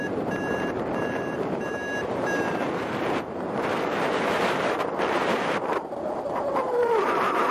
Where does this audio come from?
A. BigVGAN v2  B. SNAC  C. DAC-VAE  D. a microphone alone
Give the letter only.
A